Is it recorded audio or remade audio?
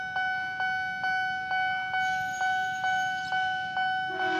recorded